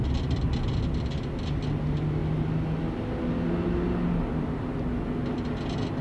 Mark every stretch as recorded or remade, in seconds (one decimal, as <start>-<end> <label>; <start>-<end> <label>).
0.0-6.0 recorded